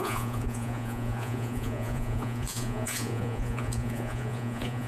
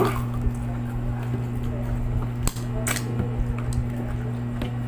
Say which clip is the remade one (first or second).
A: first